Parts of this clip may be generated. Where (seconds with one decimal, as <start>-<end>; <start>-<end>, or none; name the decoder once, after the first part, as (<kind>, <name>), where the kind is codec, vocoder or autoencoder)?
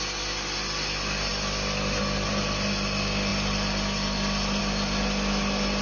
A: none